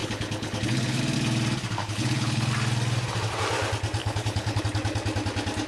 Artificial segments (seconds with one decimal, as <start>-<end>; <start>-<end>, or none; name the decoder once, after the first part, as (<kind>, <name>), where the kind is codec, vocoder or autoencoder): 0.0-1.0 (codec, HILCodec); 1.8-2.5; 4.0-4.6